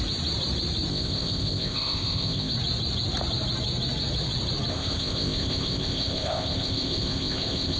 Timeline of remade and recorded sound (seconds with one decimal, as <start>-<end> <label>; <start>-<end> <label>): 0.0-0.9 recorded; 0.9-2.5 remade; 2.5-4.7 recorded; 4.7-7.8 remade